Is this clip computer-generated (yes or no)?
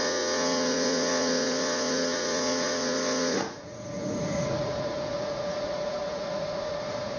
yes